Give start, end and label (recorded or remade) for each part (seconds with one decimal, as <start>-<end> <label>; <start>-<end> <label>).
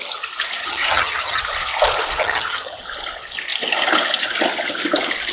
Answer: 0.0-0.6 recorded; 0.6-1.4 remade; 1.4-2.2 recorded; 2.2-2.8 remade; 2.8-5.3 recorded